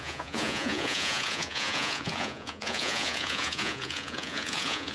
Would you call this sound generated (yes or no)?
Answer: yes